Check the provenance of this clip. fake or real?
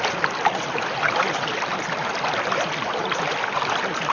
real